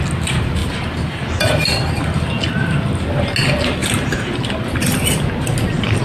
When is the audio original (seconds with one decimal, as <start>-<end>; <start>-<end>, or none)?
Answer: 0.0-0.6; 1.9-6.0